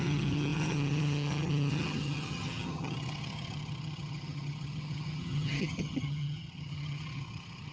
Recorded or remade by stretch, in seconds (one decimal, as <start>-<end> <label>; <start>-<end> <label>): 0.0-7.7 remade